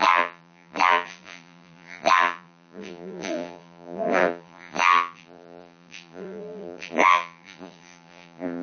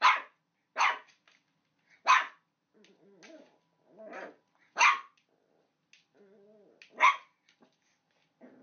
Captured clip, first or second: second